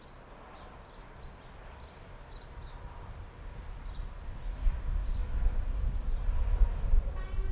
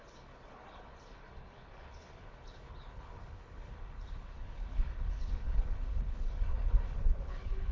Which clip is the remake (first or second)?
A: second